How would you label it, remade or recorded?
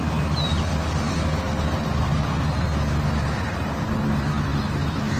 recorded